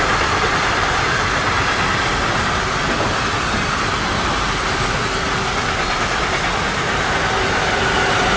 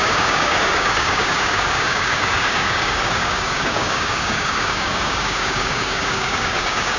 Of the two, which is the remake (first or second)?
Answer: second